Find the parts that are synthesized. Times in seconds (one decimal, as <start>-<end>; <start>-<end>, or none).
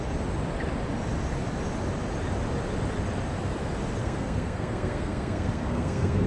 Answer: 4.0-6.3